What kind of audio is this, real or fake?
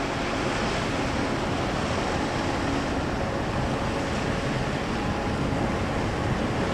real